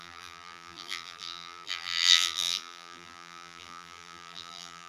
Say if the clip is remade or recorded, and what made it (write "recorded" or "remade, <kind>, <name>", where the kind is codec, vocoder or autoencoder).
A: remade, vocoder, BigVGAN v2